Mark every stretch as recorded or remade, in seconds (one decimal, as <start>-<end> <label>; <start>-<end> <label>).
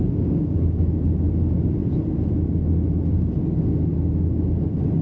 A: 0.0-0.8 remade; 0.8-5.0 recorded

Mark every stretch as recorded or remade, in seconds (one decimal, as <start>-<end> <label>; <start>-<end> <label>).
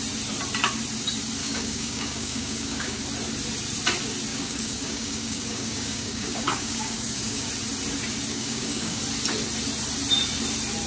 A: 0.0-1.4 recorded; 1.4-3.0 remade; 3.0-4.3 recorded; 4.3-7.5 remade; 7.5-8.3 recorded; 8.3-9.0 remade; 9.0-10.9 recorded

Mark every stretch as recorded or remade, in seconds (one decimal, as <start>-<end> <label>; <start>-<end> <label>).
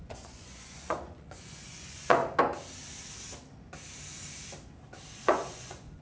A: 0.0-2.2 remade; 2.2-5.1 recorded; 5.1-6.0 remade